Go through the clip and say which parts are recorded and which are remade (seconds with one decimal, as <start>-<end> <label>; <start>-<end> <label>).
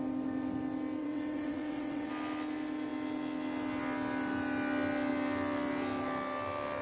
0.0-1.0 recorded; 1.0-2.1 remade; 2.1-6.8 recorded